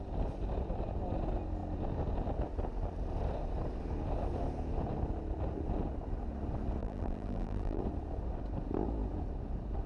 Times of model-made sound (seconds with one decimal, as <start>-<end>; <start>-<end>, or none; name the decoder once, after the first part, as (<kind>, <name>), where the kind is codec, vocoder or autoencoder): 6.8-7.8 (vocoder, BigVGAN v2)